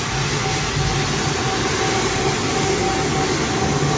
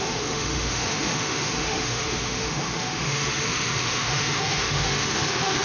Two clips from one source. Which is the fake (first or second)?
second